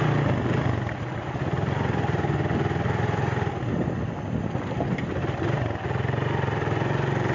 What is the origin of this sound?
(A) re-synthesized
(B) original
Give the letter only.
B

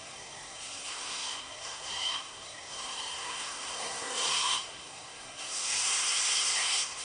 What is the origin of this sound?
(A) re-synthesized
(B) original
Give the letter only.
A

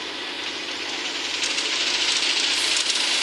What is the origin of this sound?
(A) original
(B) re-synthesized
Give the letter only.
A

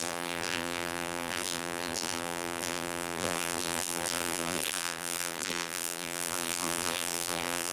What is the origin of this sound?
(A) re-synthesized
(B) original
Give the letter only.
A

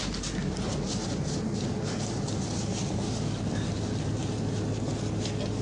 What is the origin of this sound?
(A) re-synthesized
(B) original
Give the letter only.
B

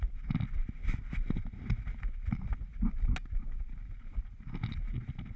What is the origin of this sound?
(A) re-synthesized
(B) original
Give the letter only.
B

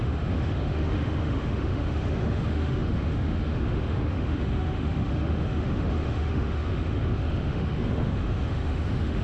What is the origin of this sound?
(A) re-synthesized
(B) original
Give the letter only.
A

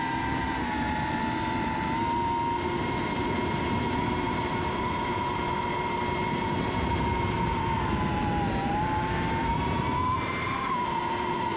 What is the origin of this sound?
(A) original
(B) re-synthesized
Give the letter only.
B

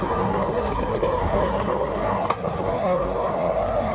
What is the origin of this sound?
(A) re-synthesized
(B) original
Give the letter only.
A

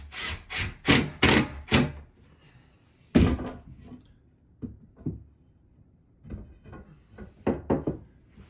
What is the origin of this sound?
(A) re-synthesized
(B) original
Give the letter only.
B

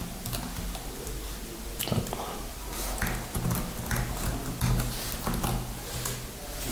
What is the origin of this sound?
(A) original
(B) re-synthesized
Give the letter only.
A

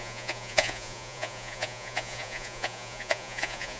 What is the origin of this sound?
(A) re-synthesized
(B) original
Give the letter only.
A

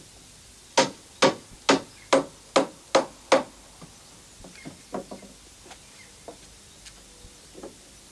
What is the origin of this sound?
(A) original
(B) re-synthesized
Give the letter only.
A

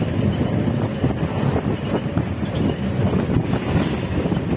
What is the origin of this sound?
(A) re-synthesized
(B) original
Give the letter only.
B